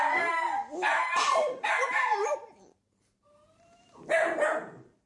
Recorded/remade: remade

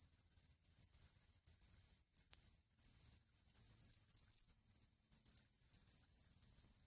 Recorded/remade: recorded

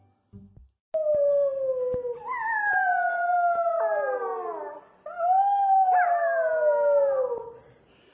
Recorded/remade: recorded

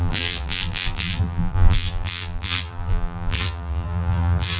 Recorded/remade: remade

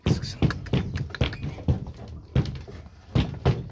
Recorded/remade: recorded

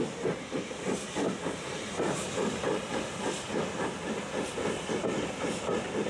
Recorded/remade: recorded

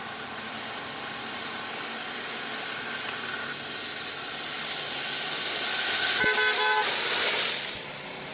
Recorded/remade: recorded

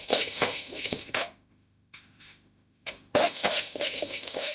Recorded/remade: remade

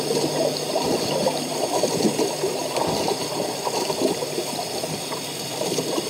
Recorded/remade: recorded